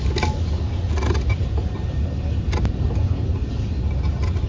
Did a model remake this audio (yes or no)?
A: no